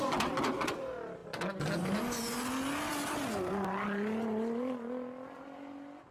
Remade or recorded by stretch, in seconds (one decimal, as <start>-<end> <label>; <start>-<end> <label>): 0.0-6.1 recorded